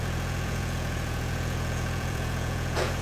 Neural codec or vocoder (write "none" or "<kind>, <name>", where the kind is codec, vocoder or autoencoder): vocoder, Vocos